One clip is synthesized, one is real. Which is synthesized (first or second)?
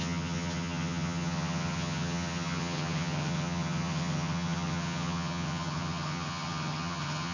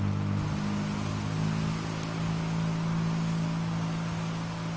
first